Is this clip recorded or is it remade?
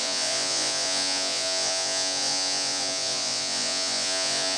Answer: remade